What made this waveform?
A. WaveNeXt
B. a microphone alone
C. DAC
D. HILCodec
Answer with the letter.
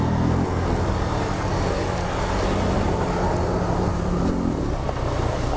B